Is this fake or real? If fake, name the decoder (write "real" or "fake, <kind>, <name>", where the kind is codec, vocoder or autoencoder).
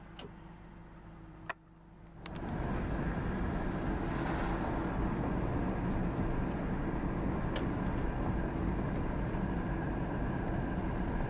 real